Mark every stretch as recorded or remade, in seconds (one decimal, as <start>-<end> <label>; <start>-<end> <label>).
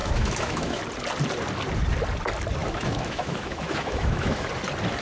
0.0-0.8 remade; 0.8-2.6 recorded; 2.6-4.5 remade; 4.5-5.0 recorded